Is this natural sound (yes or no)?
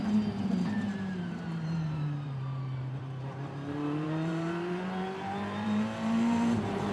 no